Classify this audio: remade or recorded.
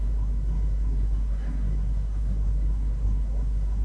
remade